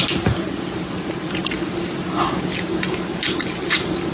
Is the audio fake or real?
real